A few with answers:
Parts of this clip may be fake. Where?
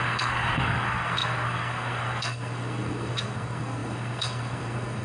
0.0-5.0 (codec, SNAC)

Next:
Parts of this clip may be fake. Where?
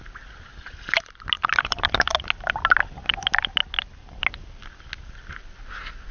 none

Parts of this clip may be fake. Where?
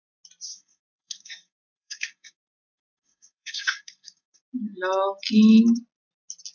0.5-4.4 (codec, SNAC)